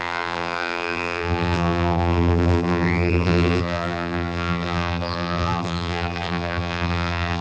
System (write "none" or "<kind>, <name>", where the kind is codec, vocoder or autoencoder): vocoder, BigVGAN v2